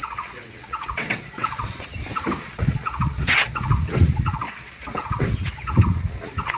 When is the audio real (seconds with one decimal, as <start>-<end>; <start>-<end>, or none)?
1.9-2.4